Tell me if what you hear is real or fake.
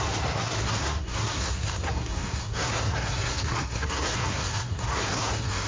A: fake